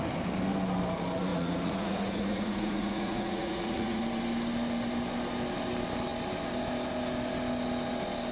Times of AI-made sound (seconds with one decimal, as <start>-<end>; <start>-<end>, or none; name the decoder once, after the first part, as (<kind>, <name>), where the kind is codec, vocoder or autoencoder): 1.3-4.0 (vocoder, Vocos)